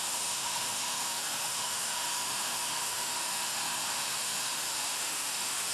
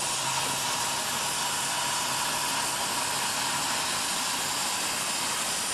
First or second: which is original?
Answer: second